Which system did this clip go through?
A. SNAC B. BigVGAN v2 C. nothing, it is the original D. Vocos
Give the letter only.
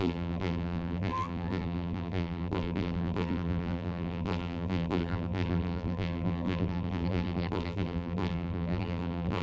B